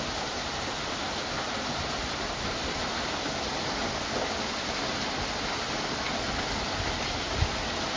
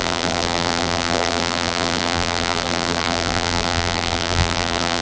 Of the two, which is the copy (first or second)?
second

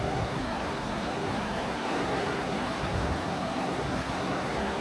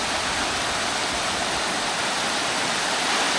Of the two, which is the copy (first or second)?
first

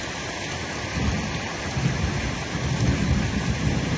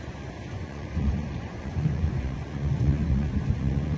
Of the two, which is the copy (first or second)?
second